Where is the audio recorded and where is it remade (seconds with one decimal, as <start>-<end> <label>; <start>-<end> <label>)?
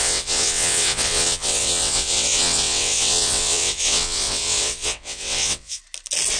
0.0-5.8 remade; 5.8-6.4 recorded